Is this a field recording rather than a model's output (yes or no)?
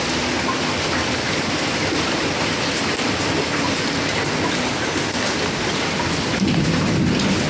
yes